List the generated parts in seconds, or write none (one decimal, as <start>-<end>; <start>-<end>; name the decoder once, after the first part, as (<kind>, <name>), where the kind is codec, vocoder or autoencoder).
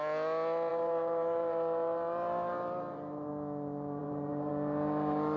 0.7-3.3 (vocoder, BigVGAN v2); 4.0-4.5